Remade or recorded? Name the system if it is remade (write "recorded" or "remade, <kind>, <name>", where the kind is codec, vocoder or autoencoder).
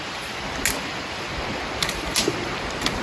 recorded